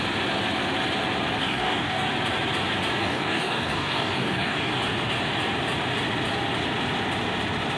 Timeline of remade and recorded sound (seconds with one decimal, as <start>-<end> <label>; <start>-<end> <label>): 0.0-1.4 recorded; 1.4-2.1 remade; 2.1-3.0 recorded; 3.0-4.7 remade; 4.7-7.8 recorded

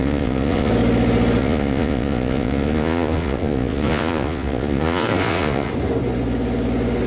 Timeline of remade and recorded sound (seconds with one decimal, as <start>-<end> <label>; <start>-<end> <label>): 0.0-0.7 remade; 0.7-1.4 recorded; 1.4-5.7 remade; 5.7-7.1 recorded